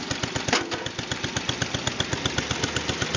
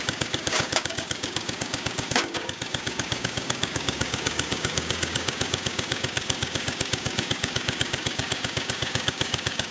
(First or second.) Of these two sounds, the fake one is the second